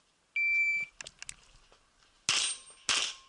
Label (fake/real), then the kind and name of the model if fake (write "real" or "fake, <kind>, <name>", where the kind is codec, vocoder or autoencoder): real